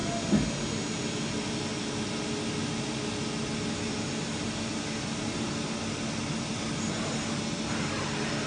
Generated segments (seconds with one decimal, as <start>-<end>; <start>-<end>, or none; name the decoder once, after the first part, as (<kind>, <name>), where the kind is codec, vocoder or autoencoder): none